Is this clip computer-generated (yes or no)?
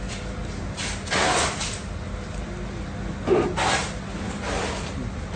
no